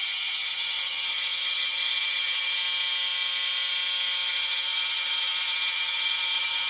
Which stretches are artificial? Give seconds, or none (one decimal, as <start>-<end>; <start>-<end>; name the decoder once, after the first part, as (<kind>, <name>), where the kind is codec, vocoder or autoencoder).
0.0-2.6 (vocoder, HiFi-GAN); 4.3-6.7